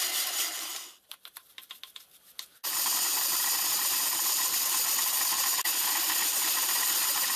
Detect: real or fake real